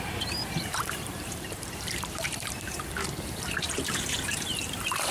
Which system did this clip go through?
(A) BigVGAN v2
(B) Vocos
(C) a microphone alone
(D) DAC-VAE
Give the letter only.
A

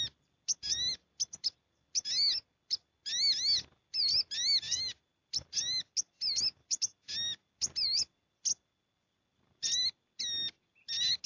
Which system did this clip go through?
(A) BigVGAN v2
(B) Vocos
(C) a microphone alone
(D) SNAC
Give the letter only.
C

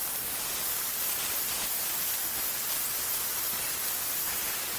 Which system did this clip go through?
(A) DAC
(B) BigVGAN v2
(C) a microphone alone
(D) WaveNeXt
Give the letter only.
C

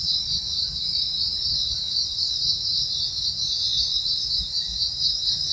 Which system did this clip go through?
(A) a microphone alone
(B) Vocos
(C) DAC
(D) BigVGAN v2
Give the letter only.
D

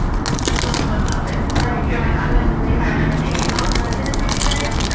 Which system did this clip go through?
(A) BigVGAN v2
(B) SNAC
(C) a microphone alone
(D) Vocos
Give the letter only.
C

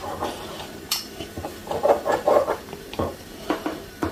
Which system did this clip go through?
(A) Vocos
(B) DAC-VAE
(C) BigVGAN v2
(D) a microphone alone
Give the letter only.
C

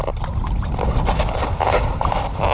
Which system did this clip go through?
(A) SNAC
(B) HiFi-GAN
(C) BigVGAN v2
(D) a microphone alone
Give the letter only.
D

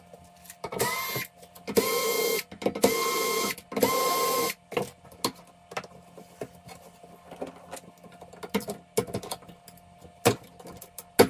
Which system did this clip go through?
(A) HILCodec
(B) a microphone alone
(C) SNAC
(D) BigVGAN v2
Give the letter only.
B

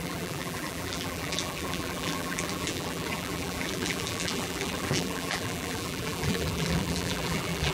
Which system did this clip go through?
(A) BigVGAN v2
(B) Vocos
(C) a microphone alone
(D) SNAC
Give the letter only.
A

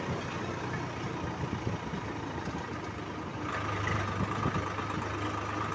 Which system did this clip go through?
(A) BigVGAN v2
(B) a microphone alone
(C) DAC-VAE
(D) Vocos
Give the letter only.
B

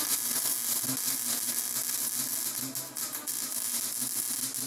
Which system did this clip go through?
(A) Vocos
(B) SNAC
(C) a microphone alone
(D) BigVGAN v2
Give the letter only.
C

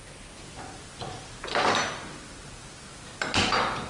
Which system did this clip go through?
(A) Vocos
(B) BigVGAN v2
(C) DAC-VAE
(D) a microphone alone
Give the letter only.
D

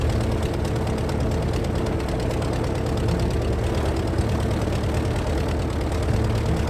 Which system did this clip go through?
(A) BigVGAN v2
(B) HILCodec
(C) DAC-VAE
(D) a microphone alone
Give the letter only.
D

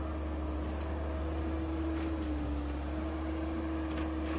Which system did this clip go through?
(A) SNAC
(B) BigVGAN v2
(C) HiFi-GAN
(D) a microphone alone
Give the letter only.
D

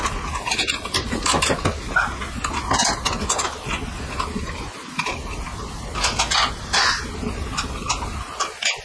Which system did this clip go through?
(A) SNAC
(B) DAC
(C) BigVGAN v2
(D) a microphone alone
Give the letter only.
D